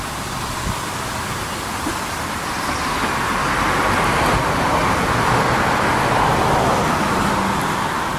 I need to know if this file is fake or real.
real